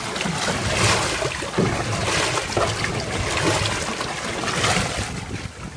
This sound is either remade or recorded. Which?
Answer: recorded